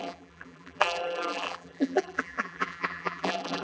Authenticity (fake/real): fake